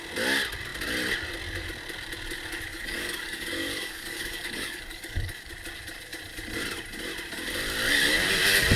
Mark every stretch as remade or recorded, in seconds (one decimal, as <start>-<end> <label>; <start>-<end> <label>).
0.0-2.7 recorded; 2.7-5.5 remade; 5.5-8.8 recorded

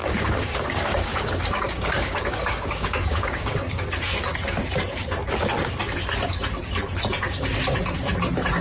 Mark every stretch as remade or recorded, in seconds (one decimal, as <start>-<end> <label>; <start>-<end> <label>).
0.0-3.8 remade; 3.8-8.6 recorded

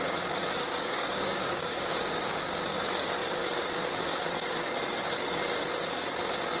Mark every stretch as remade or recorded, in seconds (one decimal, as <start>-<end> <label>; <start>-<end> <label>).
0.0-0.7 recorded; 0.7-2.4 remade; 2.4-6.6 recorded

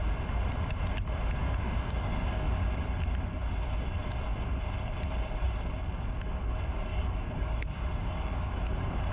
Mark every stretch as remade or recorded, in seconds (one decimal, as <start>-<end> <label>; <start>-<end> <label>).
0.0-1.4 recorded; 1.4-2.6 remade; 2.6-6.9 recorded; 6.9-8.6 remade; 8.6-9.1 recorded

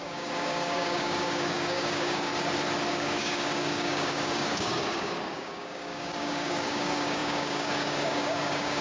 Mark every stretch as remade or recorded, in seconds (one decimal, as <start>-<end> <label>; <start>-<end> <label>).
0.0-2.3 remade; 2.3-2.9 recorded; 2.9-8.8 remade

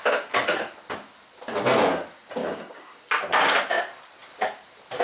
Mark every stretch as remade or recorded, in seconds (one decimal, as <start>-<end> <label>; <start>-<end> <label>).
0.0-2.4 recorded; 2.4-3.1 remade; 3.1-5.0 recorded